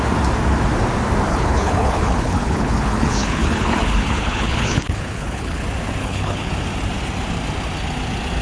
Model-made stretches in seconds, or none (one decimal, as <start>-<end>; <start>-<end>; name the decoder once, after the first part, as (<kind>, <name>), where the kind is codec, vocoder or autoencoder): 1.3-5.6 (codec, HILCodec); 6.0-6.5